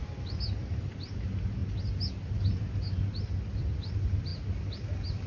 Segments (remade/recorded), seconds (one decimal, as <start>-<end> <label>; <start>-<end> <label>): 0.0-5.3 recorded